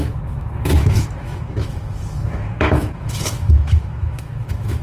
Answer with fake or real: fake